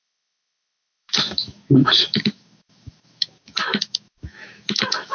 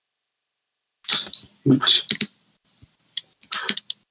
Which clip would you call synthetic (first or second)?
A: first